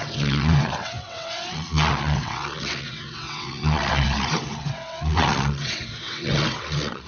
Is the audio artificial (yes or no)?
yes